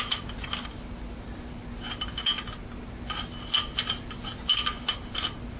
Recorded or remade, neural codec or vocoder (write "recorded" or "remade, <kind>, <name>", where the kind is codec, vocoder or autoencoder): recorded